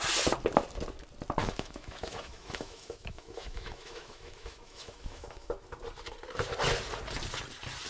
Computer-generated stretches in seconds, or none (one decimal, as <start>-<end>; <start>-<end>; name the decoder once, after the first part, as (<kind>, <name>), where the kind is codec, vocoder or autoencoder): 1.4-5.5 (autoencoder, DAC-VAE)